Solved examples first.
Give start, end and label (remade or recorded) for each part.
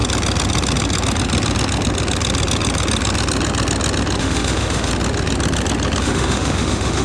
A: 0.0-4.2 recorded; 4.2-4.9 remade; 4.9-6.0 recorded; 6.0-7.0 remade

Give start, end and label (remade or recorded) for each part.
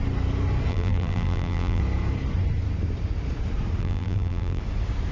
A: 0.0-0.7 recorded; 0.7-1.8 remade; 1.8-3.8 recorded; 3.8-4.6 remade; 4.6-5.1 recorded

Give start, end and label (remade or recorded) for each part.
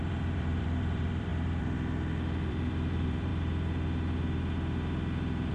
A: 0.0-1.3 remade; 1.3-2.5 recorded; 2.5-3.3 remade; 3.3-5.5 recorded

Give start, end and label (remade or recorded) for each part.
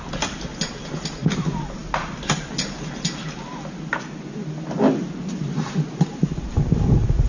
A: 0.0-7.3 recorded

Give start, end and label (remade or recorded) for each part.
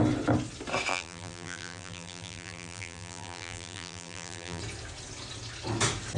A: 0.0-0.9 recorded; 0.9-4.6 remade; 4.6-6.2 recorded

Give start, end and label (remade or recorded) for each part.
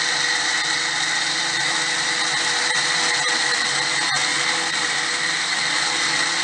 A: 0.0-6.4 recorded